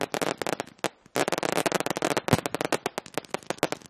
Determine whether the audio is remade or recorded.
recorded